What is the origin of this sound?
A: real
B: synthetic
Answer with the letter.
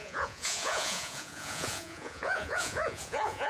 B